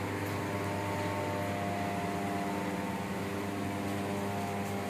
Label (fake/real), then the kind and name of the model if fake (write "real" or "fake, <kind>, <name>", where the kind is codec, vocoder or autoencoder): real